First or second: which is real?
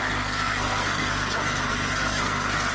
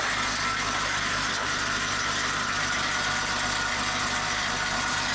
second